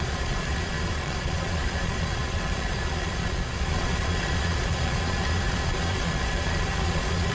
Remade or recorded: remade